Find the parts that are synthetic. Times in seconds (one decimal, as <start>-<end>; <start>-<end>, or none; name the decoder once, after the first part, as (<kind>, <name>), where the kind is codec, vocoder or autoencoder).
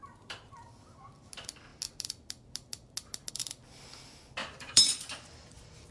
0.0-0.7 (vocoder, BigVGAN v2); 4.4-5.0